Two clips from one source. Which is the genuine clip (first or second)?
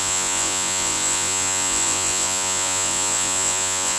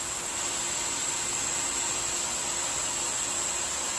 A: second